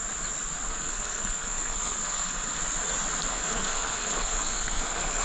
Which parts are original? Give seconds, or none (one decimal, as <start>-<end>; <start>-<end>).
0.0-0.7; 2.6-3.3